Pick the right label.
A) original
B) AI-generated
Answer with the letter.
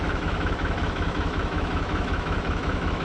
B